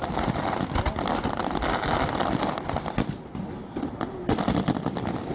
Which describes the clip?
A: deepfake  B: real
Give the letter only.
B